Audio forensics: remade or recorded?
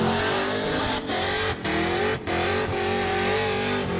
recorded